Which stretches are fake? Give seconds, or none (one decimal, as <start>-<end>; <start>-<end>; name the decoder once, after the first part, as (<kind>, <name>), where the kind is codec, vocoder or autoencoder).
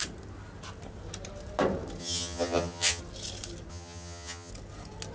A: 2.0-3.0 (vocoder, HiFi-GAN); 3.7-4.5